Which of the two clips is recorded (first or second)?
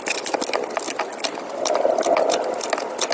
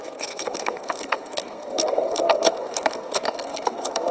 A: first